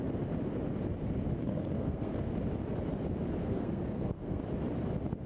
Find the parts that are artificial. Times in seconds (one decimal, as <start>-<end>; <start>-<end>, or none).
1.4-2.3; 3.4-4.4